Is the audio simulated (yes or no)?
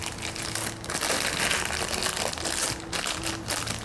no